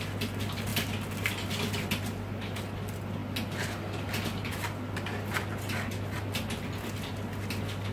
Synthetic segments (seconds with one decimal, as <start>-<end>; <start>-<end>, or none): none